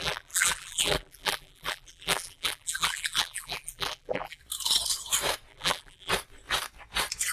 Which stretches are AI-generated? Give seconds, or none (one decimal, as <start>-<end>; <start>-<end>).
0.0-4.4; 5.5-6.1